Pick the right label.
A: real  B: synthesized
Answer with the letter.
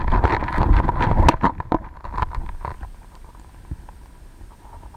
A